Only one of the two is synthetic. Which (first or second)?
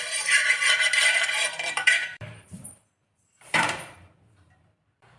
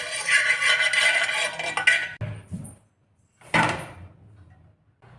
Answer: first